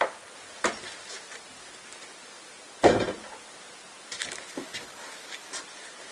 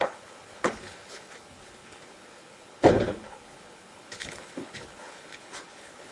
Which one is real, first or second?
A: first